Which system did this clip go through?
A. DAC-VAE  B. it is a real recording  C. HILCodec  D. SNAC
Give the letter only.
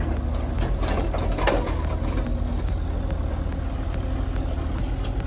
B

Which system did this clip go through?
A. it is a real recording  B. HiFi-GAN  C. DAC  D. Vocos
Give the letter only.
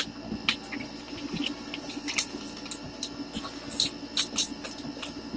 A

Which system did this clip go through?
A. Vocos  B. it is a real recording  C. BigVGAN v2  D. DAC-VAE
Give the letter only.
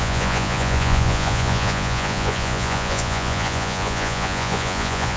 A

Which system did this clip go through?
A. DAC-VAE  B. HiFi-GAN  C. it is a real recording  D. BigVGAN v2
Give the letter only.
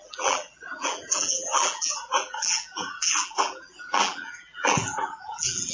D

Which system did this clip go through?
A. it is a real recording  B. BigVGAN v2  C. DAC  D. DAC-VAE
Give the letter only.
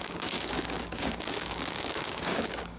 C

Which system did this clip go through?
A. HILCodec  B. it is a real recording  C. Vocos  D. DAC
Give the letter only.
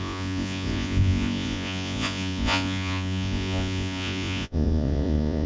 C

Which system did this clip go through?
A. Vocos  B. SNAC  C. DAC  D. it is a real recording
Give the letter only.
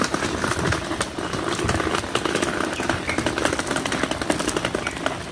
D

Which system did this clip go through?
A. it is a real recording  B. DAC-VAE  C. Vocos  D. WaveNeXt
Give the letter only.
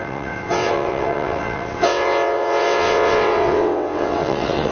D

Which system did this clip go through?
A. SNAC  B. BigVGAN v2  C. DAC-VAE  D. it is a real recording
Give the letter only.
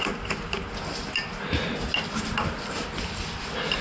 D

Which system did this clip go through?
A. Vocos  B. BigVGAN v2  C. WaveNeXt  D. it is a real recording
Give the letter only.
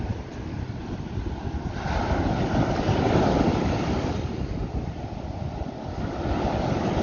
D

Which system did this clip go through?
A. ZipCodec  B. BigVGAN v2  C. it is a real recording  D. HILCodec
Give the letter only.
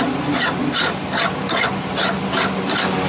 C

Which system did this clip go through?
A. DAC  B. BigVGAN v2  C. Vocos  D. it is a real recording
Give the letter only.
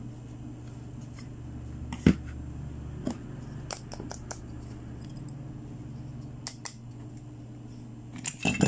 D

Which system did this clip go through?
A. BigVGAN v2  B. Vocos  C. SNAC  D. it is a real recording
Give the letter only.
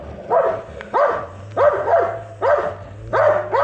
D